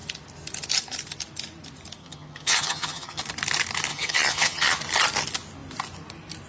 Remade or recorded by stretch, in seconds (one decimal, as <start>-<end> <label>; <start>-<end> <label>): 0.0-2.0 recorded; 2.0-3.2 remade; 3.2-3.9 recorded; 3.9-4.8 remade; 4.8-6.5 recorded